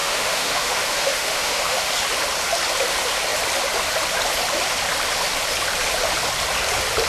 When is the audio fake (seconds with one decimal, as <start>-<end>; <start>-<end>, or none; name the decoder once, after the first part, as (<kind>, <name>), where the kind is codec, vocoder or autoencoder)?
0.0-1.9 (autoencoder, DAC-VAE)